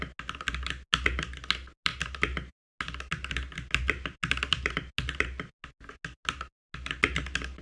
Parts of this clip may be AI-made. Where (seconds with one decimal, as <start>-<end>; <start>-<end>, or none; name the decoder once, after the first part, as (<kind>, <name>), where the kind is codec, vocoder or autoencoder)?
none